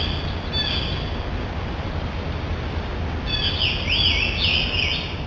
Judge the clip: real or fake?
real